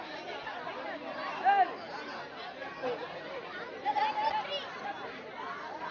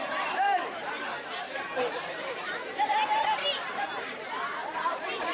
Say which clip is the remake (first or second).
second